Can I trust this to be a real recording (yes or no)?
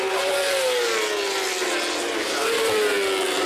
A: yes